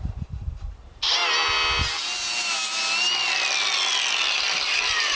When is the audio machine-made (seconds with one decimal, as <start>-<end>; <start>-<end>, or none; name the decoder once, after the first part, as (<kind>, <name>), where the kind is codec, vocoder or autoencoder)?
0.0-1.2 (vocoder, BigVGAN v2); 4.3-5.1